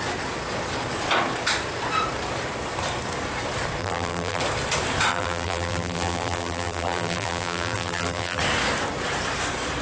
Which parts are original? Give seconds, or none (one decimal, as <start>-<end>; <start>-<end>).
0.0-3.8; 4.4-5.1; 8.4-9.8